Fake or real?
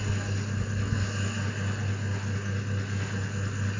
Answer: real